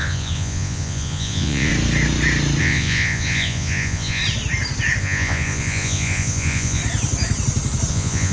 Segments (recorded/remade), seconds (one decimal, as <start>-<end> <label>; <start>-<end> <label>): 0.0-1.7 remade; 1.7-2.6 recorded; 2.6-4.2 remade; 4.2-5.0 recorded; 5.0-6.8 remade; 6.8-7.9 recorded; 7.9-8.3 remade